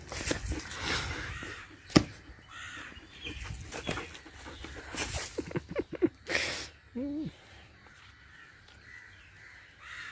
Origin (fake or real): real